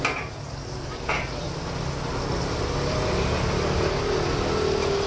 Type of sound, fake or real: real